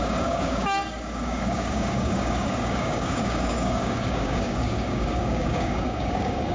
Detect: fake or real fake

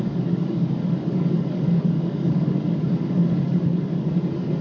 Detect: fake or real fake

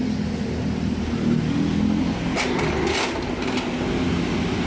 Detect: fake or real real